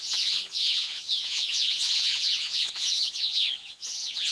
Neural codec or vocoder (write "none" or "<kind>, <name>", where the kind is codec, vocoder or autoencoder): vocoder, Vocos